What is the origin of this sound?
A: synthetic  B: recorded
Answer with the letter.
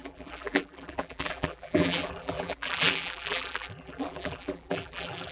A